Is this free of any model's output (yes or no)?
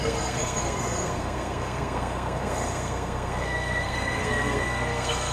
no